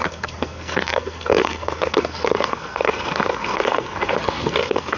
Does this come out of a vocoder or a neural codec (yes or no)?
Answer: yes